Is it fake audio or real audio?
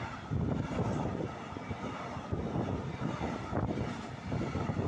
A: real